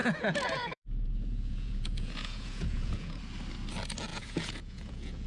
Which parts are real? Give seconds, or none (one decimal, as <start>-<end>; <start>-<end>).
3.2-4.1